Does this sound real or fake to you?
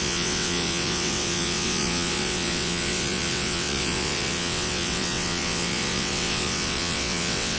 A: fake